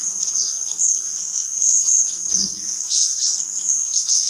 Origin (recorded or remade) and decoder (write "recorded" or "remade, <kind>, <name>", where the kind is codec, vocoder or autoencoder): remade, codec, SNAC